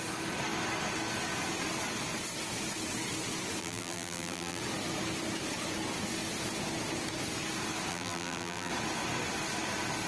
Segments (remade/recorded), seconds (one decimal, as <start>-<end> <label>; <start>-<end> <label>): 0.0-3.6 recorded; 3.6-4.6 remade; 4.6-7.9 recorded; 7.9-8.7 remade; 8.7-10.1 recorded